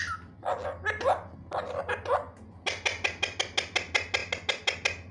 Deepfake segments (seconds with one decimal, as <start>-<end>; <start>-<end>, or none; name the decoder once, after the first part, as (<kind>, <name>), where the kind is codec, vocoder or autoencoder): none